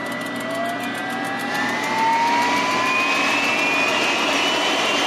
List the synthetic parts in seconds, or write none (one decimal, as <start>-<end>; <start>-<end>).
none